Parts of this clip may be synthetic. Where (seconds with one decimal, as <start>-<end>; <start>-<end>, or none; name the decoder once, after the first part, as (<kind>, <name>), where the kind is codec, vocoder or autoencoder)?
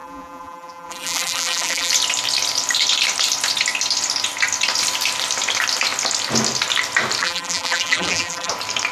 0.0-1.9 (vocoder, BigVGAN v2); 7.2-8.5